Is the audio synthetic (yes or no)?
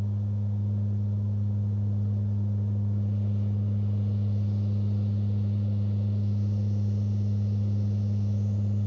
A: no